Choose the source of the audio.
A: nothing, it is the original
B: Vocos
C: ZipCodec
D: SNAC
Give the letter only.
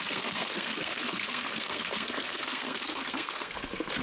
D